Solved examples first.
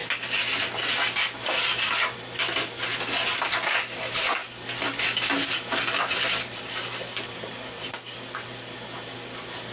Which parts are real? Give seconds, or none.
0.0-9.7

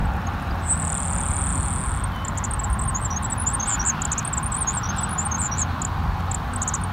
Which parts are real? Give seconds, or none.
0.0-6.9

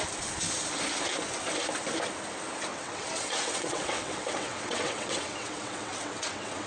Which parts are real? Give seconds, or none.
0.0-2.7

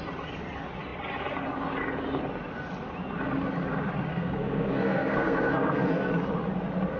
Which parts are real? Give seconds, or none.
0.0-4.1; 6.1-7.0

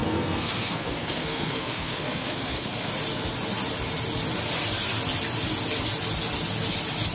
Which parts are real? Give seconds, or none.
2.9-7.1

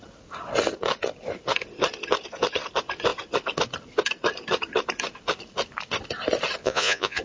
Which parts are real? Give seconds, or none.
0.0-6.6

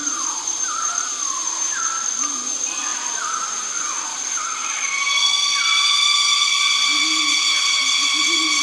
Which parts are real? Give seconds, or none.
1.8-8.6